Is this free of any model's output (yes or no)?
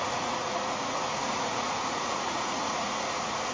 no